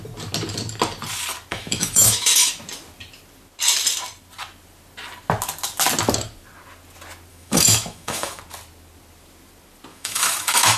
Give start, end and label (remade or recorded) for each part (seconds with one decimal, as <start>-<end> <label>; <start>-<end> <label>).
0.0-1.5 recorded; 1.5-2.5 remade; 2.5-7.3 recorded; 7.3-8.4 remade; 8.4-9.9 recorded; 9.9-10.8 remade